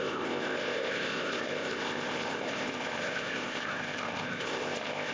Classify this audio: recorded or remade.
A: remade